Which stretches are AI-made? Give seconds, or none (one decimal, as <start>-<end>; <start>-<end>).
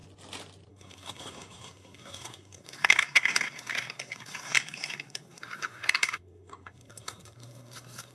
0.7-8.1